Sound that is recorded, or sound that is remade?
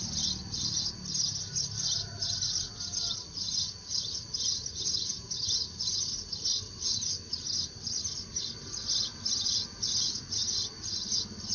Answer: recorded